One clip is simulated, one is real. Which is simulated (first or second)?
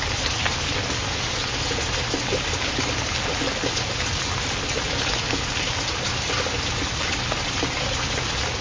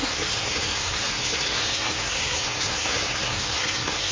second